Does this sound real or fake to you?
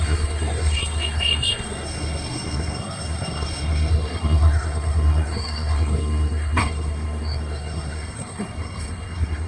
fake